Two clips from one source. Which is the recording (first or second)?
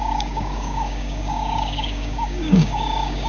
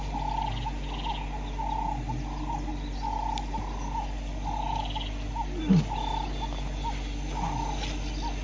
second